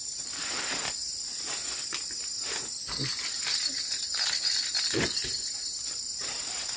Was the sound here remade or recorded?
remade